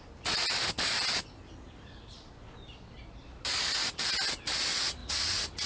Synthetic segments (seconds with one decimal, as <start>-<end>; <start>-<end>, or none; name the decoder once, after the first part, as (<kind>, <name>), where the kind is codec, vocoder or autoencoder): 5.0-5.7 (vocoder, Vocos)